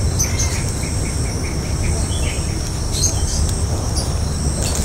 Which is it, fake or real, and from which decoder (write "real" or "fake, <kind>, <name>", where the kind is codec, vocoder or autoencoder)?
real